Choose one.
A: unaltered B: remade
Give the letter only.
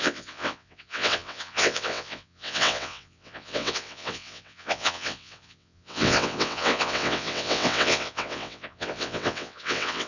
B